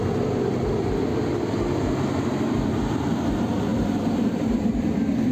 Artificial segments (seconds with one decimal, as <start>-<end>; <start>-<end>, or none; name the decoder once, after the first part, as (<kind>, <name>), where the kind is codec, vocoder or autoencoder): none